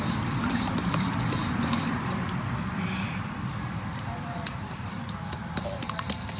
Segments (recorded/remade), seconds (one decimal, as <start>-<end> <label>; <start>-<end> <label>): 0.0-5.4 remade; 5.4-6.4 recorded